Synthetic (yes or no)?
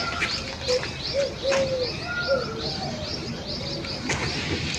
no